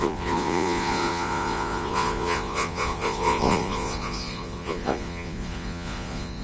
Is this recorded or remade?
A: remade